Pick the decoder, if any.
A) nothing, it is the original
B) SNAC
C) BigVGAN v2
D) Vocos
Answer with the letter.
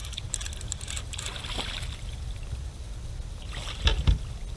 A